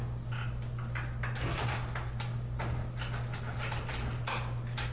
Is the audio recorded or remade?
recorded